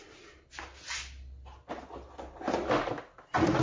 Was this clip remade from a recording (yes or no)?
no